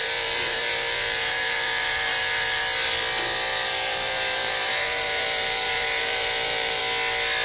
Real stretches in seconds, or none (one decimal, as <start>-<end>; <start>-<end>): 2.6-3.5; 6.8-7.4